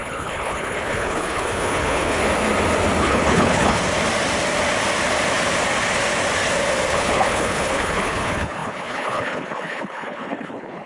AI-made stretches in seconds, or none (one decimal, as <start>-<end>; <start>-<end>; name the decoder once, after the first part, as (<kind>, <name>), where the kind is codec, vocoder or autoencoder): 0.0-2.2 (codec, HILCodec); 3.0-3.8; 6.9-10.9